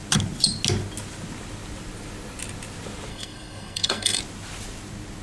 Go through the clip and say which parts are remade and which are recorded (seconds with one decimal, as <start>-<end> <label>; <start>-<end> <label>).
0.0-3.1 recorded; 3.1-4.2 remade; 4.2-5.2 recorded